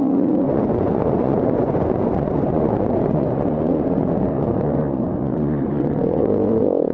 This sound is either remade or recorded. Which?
remade